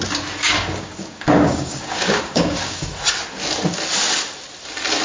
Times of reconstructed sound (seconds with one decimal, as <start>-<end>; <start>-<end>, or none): 0.4-2.9